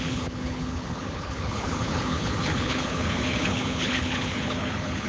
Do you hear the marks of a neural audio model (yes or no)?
yes